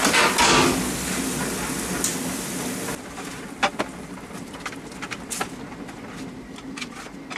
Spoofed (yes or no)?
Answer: no